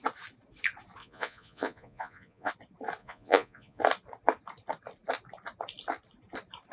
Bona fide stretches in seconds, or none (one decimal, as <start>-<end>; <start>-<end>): 0.0-1.0; 2.5-3.0; 3.8-6.7